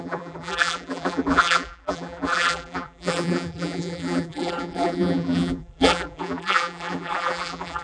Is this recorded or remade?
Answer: remade